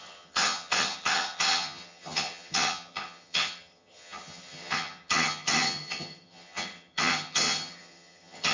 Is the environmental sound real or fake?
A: fake